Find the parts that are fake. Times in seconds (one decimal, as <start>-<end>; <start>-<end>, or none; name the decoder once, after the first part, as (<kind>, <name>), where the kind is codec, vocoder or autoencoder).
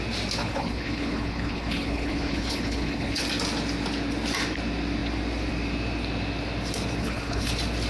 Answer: 0.4-3.2 (codec, HILCodec); 7.0-7.5